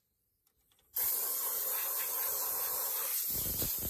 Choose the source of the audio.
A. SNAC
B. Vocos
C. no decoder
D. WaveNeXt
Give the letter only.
C